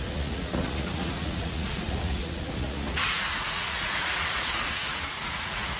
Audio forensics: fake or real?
fake